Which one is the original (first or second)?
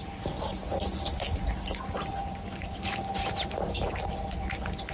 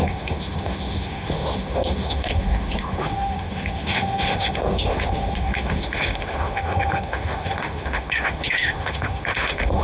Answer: first